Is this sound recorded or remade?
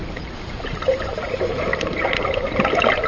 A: remade